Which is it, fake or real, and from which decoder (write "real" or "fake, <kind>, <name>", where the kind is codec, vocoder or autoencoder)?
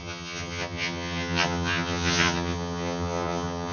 fake, vocoder, HiFi-GAN